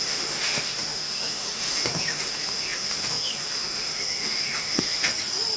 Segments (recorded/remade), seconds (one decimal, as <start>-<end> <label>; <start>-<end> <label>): 0.0-5.1 remade; 5.1-5.6 recorded